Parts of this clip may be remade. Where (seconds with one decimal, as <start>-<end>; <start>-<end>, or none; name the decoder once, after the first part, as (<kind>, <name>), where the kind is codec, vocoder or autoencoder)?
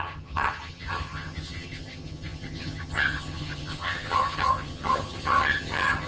0.0-6.1 (vocoder, HiFi-GAN)